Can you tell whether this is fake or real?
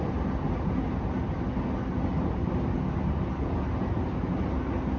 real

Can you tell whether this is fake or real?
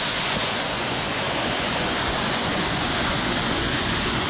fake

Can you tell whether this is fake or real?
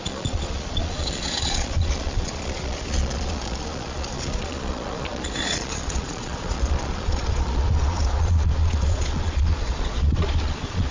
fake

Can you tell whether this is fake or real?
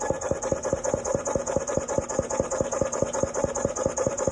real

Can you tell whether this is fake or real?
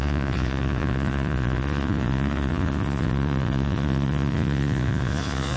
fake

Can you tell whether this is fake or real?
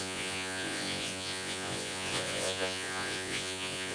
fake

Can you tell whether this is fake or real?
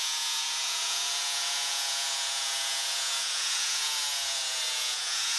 fake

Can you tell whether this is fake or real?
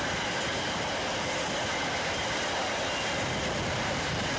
real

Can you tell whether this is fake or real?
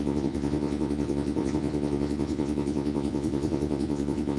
fake